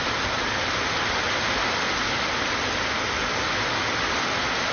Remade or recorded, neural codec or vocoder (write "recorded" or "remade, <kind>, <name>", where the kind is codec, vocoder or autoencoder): recorded